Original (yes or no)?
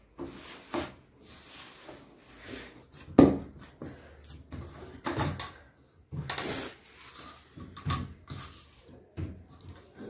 yes